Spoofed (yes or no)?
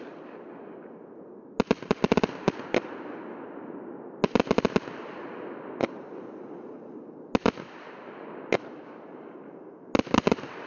no